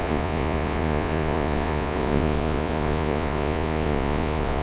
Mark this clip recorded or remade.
remade